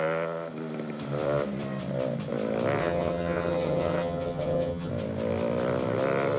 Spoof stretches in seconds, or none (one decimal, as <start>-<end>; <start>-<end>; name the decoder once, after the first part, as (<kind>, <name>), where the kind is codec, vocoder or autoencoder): 2.8-4.9 (vocoder, HiFi-GAN)